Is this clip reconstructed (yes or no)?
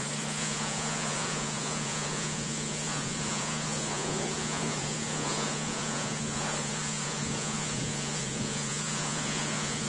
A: yes